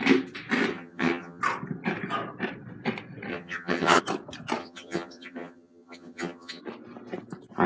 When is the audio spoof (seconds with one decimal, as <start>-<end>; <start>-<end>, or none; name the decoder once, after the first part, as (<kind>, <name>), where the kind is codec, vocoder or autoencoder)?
0.7-1.4 (vocoder, HiFi-GAN); 3.3-4.0; 4.6-6.6